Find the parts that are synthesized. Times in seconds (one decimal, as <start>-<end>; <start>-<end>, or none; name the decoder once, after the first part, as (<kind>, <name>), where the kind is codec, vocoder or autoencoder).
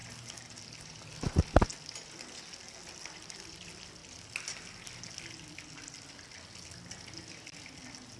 none